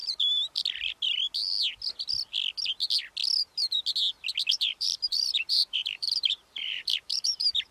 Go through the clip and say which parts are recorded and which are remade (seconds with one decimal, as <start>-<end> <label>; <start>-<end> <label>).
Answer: 0.0-0.6 remade; 0.6-4.5 recorded; 4.5-7.7 remade